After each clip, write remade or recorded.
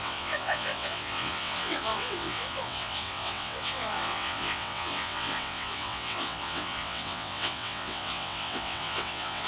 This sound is remade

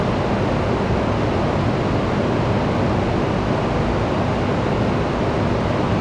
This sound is recorded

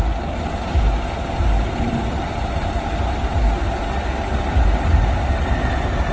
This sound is recorded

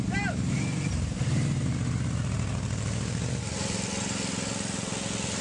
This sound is recorded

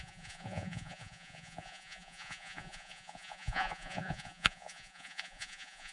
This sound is remade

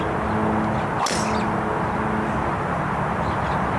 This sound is recorded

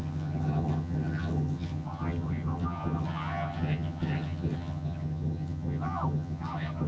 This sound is remade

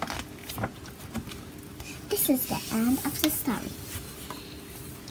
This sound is recorded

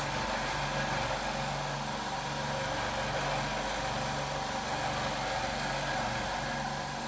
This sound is recorded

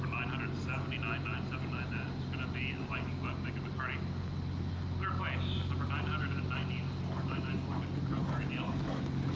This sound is recorded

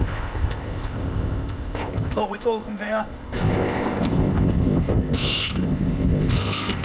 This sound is remade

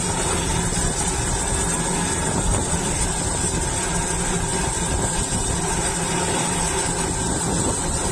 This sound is recorded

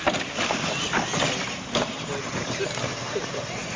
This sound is recorded